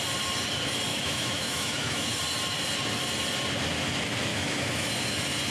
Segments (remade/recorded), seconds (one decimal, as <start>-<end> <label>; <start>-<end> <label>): 0.0-0.9 recorded; 0.9-2.2 remade; 2.2-4.3 recorded; 4.3-4.9 remade; 4.9-5.5 recorded